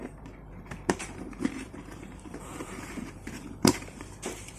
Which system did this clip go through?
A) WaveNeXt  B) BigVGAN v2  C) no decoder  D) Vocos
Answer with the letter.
B